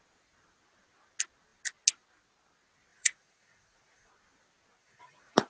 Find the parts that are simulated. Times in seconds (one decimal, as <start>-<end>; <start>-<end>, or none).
2.9-4.1; 4.8-5.5